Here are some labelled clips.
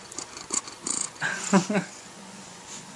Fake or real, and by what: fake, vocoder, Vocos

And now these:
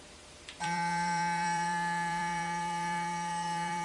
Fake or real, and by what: fake, vocoder, BigVGAN v2